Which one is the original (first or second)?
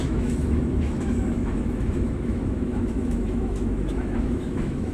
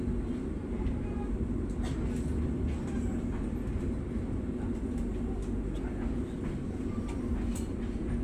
second